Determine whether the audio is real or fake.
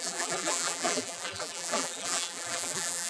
fake